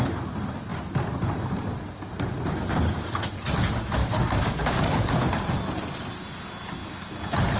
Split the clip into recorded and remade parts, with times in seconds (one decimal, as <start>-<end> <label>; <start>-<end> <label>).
0.0-4.0 recorded; 4.0-5.2 remade; 5.2-7.6 recorded